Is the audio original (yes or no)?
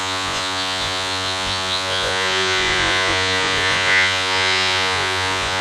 no